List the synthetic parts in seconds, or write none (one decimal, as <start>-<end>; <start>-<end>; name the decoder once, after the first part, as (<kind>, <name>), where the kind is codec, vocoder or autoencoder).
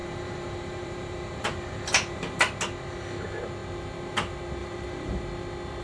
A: 0.0-2.4 (vocoder, BigVGAN v2); 4.6-5.2